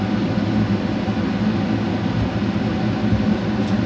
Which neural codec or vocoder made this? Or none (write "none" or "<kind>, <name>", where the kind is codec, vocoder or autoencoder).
none